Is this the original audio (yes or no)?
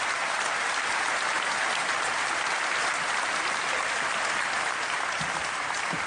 yes